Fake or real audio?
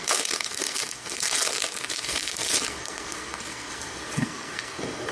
fake